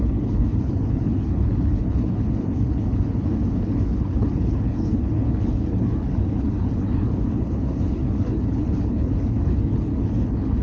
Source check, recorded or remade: remade